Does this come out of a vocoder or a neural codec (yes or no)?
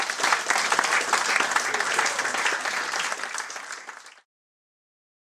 no